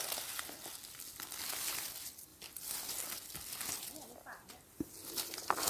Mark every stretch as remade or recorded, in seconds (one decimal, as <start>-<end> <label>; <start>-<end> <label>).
0.0-5.7 recorded